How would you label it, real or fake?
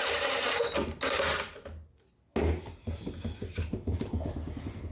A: real